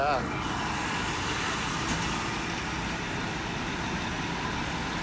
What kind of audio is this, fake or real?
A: real